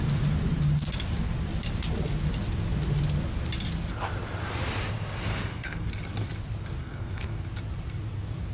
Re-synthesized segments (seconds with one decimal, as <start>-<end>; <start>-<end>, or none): 5.3-5.9; 6.8-7.4